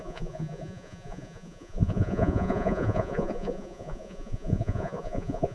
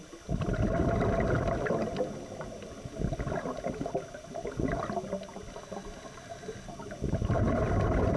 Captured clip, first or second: second